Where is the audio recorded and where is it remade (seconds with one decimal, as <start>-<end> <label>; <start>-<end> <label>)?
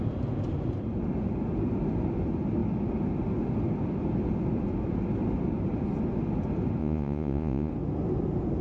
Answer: 0.0-6.8 recorded; 6.8-7.7 remade; 7.7-8.6 recorded